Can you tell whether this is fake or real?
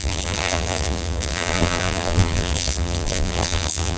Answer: fake